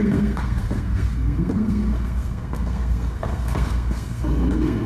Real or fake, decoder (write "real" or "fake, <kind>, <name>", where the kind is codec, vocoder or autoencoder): fake, codec, SNAC